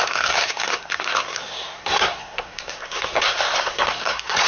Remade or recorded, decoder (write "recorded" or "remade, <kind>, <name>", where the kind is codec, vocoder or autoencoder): remade, codec, SNAC